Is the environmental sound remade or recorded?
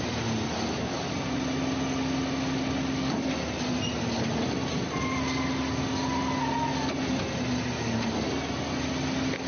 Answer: recorded